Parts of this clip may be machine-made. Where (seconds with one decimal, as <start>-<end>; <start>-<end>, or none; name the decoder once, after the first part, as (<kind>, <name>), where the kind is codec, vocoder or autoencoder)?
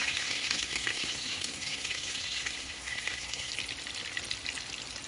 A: 0.0-3.5 (codec, SNAC)